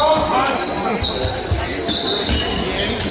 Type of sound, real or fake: real